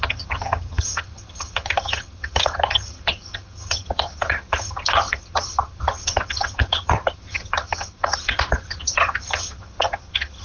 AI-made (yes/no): yes